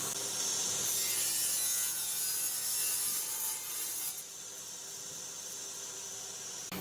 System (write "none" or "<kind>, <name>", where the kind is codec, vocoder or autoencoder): none